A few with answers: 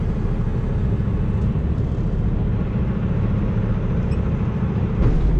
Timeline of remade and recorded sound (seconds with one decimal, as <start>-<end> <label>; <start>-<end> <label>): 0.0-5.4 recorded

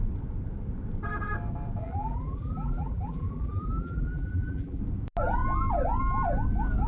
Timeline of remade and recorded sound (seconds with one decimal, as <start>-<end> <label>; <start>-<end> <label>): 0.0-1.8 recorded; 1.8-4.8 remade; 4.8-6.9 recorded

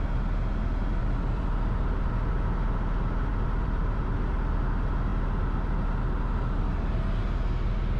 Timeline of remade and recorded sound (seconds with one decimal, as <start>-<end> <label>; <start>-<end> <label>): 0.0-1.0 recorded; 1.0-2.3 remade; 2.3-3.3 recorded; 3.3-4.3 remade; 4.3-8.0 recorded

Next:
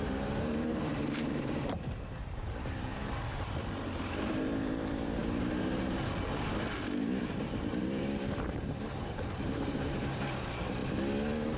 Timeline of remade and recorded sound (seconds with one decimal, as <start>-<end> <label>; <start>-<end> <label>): 0.0-10.8 remade; 10.8-11.6 recorded